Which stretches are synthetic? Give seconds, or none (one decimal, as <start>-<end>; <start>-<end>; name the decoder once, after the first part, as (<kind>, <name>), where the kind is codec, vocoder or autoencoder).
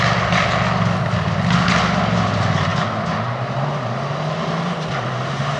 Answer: none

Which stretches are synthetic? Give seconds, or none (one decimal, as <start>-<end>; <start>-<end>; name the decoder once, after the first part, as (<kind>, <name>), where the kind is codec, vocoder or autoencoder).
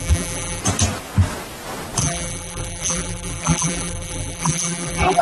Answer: 0.0-0.6 (vocoder, BigVGAN v2); 2.0-5.2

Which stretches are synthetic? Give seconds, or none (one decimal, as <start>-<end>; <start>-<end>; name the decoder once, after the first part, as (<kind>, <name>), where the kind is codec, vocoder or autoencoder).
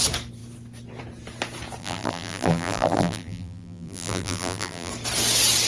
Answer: 1.8-4.9 (vocoder, BigVGAN v2)